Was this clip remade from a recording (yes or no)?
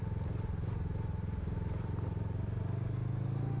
no